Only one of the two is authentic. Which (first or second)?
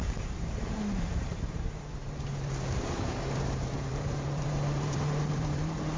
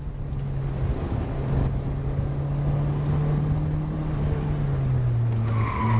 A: second